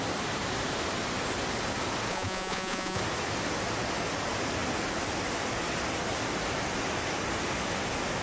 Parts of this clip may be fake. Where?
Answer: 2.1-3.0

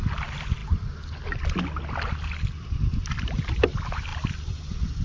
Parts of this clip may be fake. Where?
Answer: none

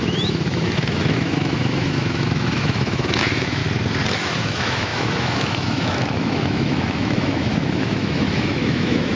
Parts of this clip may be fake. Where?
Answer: 0.0-3.6; 4.2-9.2

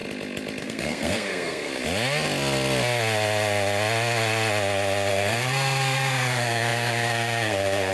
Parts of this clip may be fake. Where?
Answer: 0.6-1.7; 5.1-7.9

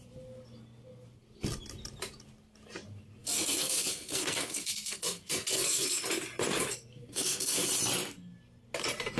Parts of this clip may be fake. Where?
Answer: 3.2-6.0; 6.5-7.7

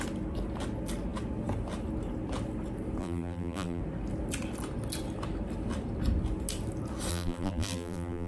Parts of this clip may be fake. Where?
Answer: 3.0-3.8; 7.1-8.3